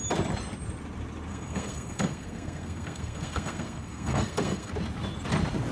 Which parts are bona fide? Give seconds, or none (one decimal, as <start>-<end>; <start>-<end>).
0.0-1.3; 4.7-5.7